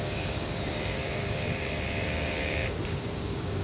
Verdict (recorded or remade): remade